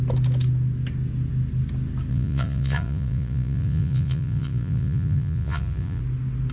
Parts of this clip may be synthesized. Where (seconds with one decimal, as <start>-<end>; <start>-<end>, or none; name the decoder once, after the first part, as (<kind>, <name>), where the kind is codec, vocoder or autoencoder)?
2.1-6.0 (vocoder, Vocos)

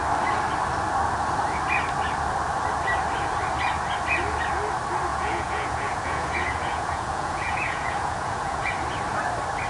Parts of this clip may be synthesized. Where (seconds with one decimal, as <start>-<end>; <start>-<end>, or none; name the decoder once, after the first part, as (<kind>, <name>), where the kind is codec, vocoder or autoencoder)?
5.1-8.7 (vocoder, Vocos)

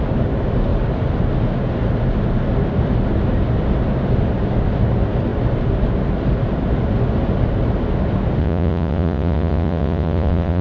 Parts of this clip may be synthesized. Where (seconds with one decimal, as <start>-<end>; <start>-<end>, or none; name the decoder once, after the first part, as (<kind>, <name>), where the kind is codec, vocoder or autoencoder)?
8.4-10.6 (vocoder, Vocos)